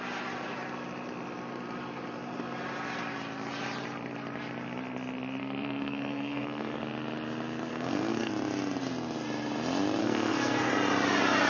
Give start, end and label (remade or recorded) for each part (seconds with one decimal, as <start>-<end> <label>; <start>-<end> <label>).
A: 0.0-5.4 recorded; 5.4-6.8 remade; 6.8-7.7 recorded; 7.7-8.3 remade; 8.3-10.0 recorded; 10.0-10.7 remade; 10.7-11.5 recorded